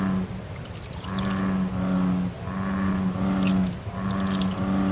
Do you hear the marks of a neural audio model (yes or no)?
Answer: no